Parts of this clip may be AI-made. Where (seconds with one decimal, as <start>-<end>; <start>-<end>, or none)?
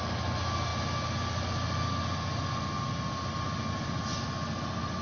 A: none